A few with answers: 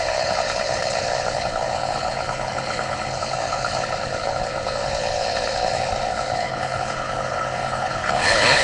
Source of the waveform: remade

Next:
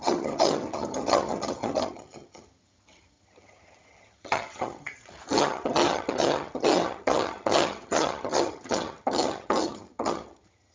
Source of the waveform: remade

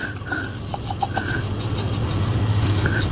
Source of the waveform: recorded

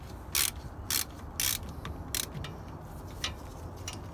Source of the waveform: recorded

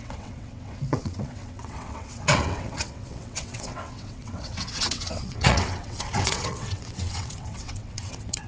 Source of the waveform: remade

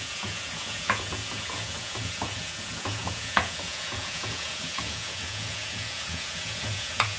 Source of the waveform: remade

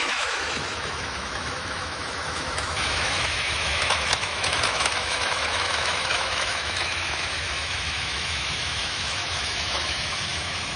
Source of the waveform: remade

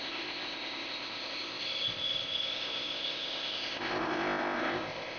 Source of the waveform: remade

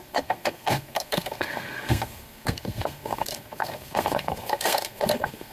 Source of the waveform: remade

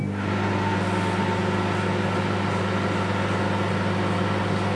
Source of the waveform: recorded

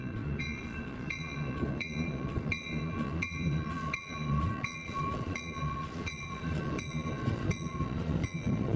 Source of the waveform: remade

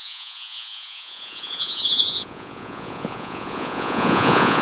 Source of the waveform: remade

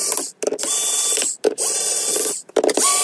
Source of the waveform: recorded